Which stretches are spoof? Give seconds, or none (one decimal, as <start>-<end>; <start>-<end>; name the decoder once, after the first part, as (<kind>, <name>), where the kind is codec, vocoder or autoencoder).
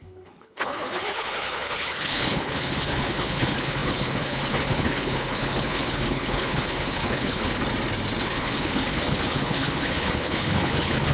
0.0-7.6 (codec, HILCodec); 8.2-11.1